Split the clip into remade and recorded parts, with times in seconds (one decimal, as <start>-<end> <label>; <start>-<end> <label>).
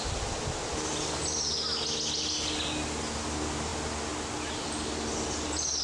0.0-5.8 recorded